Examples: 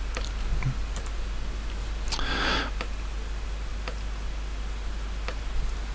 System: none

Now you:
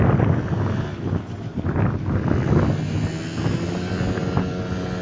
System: none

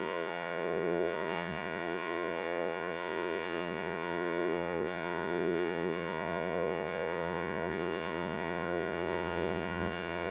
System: vocoder, Vocos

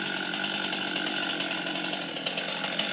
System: none